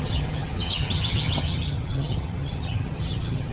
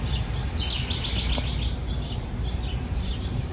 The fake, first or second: first